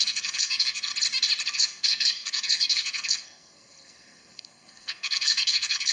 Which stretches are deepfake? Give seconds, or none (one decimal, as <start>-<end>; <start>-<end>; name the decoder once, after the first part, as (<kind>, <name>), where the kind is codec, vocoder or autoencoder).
0.0-0.9 (codec, SNAC); 1.5-5.9